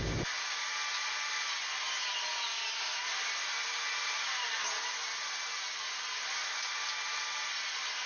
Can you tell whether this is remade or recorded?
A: recorded